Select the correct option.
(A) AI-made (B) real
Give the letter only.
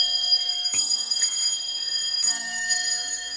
A